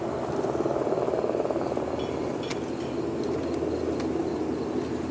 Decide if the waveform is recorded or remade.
recorded